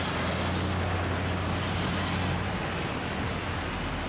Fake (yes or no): no